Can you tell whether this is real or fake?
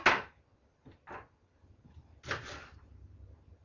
real